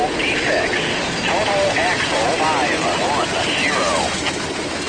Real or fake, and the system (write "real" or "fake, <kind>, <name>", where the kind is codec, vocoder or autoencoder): real